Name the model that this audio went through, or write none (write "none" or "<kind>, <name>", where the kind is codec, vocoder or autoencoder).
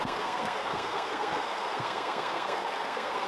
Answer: codec, SNAC